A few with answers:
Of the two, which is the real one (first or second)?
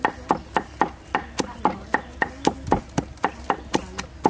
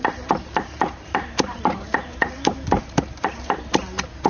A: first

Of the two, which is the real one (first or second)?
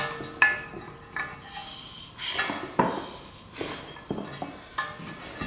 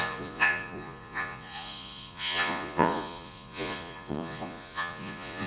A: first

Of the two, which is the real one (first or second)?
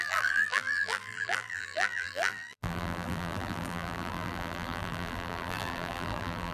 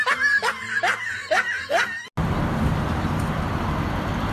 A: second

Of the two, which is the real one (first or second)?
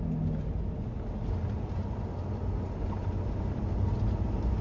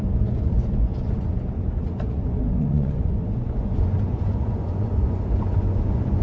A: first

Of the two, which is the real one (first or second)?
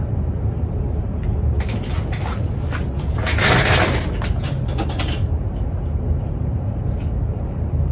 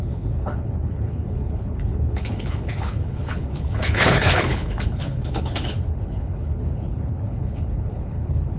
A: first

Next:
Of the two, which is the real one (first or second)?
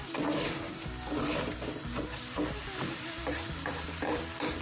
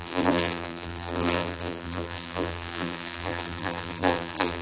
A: first